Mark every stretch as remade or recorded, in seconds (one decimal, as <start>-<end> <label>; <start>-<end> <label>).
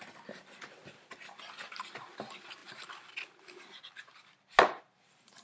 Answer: 0.0-5.4 recorded